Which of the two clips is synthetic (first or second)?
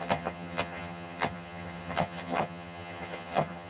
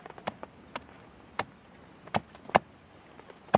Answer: first